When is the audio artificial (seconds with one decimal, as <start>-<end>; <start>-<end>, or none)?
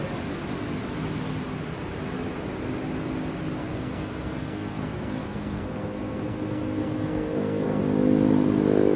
3.6-7.8